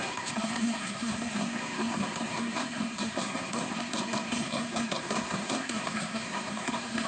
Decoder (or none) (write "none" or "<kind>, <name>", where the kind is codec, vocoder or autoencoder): codec, SNAC